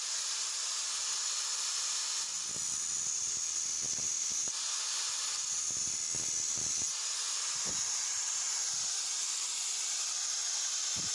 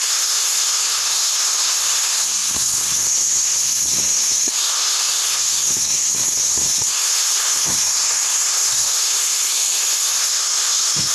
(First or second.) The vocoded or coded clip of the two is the second